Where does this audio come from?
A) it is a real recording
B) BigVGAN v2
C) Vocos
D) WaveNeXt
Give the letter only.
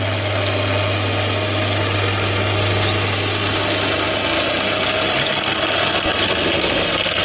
A